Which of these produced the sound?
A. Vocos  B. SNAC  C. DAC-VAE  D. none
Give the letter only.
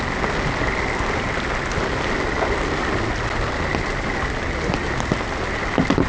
D